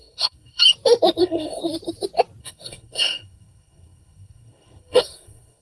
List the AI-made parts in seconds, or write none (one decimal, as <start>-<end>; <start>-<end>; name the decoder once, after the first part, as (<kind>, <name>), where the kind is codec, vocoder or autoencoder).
0.0-0.6 (codec, SNAC); 1.2-1.6; 2.4-5.6